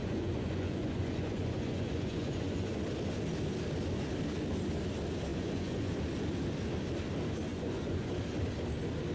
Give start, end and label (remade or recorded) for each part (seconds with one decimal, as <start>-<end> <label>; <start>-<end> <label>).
0.0-2.8 remade; 2.8-5.3 recorded; 5.3-5.9 remade; 5.9-7.5 recorded; 7.5-8.1 remade; 8.1-9.1 recorded